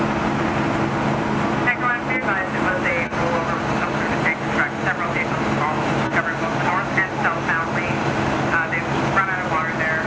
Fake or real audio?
real